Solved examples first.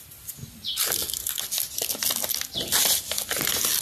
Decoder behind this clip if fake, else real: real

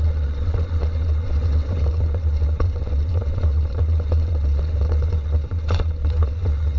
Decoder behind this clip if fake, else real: fake, vocoder, WaveNeXt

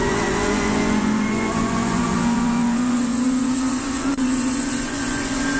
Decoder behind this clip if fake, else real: fake, vocoder, Vocos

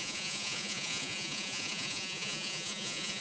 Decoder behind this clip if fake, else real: fake, vocoder, Vocos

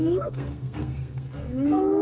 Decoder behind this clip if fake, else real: fake, codec, SNAC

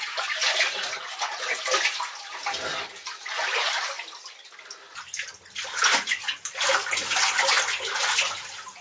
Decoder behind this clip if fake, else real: real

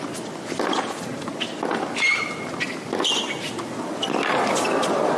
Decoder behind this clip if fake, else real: real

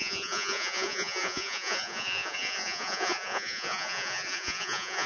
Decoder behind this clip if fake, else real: fake, vocoder, Vocos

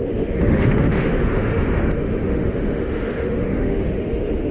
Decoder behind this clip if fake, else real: fake, autoencoder, DAC-VAE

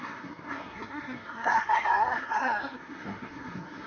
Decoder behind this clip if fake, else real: fake, codec, SNAC